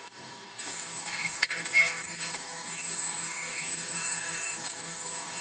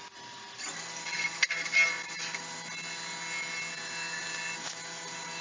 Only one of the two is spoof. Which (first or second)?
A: first